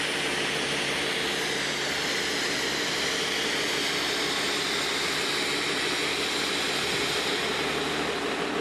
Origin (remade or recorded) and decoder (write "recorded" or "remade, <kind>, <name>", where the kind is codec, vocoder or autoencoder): recorded